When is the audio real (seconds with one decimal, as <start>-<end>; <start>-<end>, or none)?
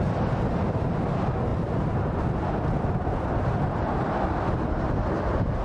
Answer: 0.0-5.6